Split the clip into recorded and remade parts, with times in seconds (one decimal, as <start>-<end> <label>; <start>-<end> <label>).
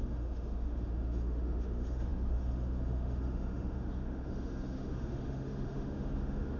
0.0-6.6 remade